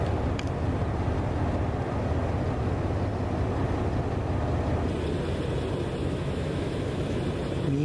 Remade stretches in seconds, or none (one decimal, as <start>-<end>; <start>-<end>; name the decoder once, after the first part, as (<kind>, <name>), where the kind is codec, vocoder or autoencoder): 6.0-7.2 (autoencoder, DAC-VAE)